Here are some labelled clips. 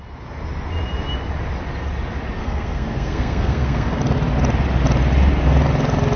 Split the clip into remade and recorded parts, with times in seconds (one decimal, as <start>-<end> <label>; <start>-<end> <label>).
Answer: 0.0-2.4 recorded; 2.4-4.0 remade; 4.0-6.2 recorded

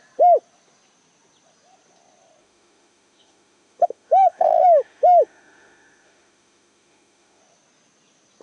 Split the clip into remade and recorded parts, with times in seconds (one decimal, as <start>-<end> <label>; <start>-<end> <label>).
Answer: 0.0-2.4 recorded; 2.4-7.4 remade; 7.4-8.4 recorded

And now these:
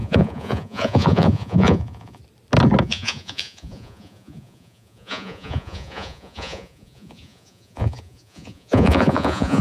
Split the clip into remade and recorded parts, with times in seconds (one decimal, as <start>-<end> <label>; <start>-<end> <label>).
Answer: 0.0-2.2 remade; 2.2-2.8 recorded; 2.8-9.6 remade

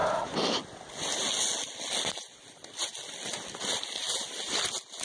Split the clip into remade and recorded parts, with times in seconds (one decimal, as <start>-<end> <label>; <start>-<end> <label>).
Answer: 0.0-5.0 recorded

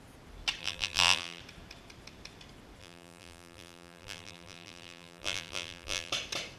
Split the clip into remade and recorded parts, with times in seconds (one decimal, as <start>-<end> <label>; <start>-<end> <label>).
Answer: 0.0-0.6 recorded; 0.6-1.4 remade; 1.4-2.8 recorded; 2.8-6.1 remade; 6.1-6.6 recorded